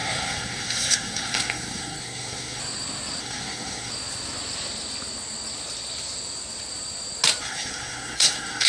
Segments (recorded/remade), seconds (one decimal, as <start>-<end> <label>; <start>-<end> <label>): 0.0-2.6 remade; 2.6-3.2 recorded; 3.2-3.9 remade; 3.9-7.4 recorded; 7.4-8.7 remade